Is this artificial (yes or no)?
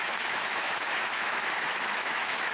yes